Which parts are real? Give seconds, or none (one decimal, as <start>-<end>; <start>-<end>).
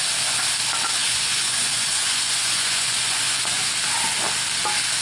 0.0-1.0; 3.6-5.0